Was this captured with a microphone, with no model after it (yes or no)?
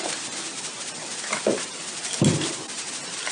yes